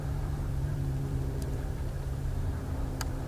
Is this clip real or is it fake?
fake